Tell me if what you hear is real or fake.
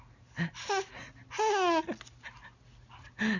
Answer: real